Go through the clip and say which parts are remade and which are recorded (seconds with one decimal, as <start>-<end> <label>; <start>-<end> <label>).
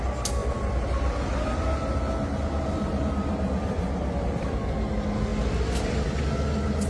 0.0-0.4 recorded; 0.4-4.5 remade; 4.5-6.9 recorded